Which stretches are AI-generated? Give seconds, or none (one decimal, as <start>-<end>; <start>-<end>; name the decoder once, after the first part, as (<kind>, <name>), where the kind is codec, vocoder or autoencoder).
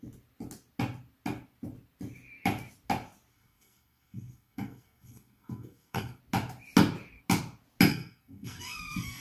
3.3-6.2 (codec, SNAC); 7.9-9.2